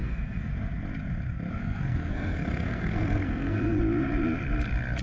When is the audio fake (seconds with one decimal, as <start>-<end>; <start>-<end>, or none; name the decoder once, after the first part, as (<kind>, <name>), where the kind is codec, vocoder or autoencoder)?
0.0-0.5 (codec, SNAC); 1.6-3.8